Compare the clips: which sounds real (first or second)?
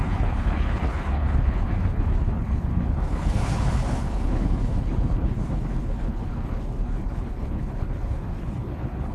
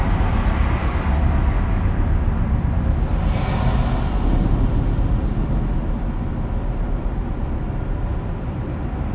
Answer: second